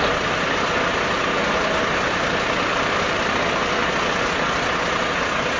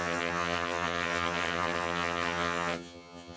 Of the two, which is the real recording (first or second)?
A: first